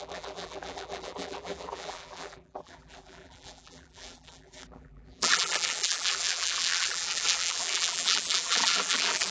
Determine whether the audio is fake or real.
fake